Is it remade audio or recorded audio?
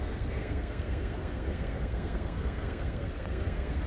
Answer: remade